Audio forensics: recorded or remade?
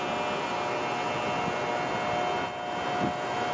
recorded